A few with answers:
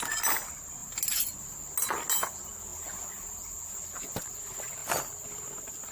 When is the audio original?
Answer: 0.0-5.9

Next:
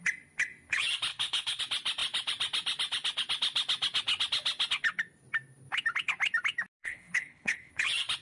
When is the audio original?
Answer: 0.0-1.1; 1.6-6.8; 7.7-8.2

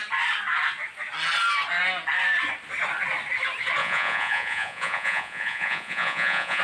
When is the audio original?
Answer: 0.0-3.8

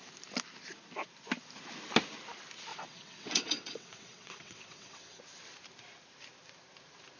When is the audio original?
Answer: 0.0-2.7; 5.2-7.2

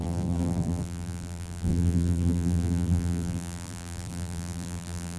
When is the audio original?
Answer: none

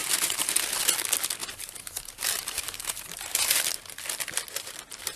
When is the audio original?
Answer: 0.8-1.4; 3.6-5.2

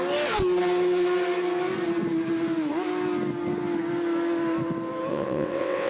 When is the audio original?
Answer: 0.0-5.1

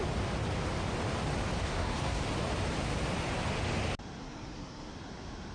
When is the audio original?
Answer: 0.0-1.6; 2.2-4.2; 4.9-5.5